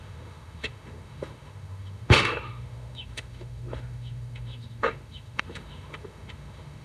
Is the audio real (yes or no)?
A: no